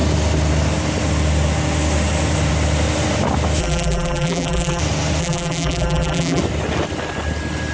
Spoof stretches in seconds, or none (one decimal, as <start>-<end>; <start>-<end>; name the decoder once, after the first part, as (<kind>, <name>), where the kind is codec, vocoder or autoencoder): 3.6-4.8 (vocoder, BigVGAN v2); 5.2-6.4